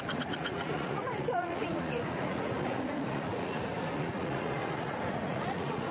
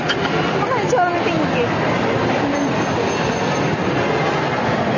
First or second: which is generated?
first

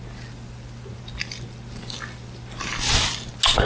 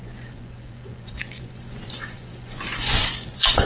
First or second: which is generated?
second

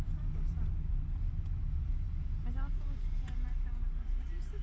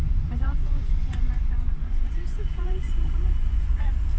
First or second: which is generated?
second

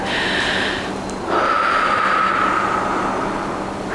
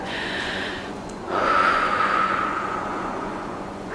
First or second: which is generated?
second